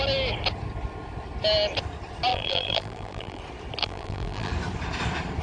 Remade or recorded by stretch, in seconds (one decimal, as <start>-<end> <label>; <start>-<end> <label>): 0.0-2.3 recorded; 2.3-3.4 remade; 3.4-3.8 recorded; 3.8-4.5 remade; 4.5-5.4 recorded